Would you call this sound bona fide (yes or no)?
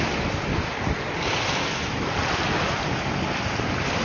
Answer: yes